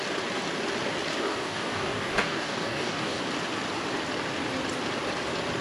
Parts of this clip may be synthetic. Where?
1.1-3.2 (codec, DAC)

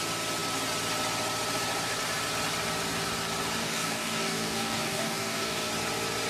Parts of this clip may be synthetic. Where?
3.6-5.7 (codec, DAC)

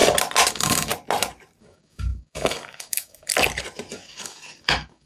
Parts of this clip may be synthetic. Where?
0.5-0.9 (codec, DAC); 1.6-3.3; 3.9-5.1

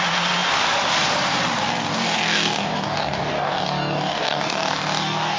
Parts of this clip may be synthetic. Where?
1.9-5.4 (codec, DAC)